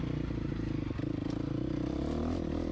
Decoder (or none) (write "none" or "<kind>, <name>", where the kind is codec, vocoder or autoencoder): none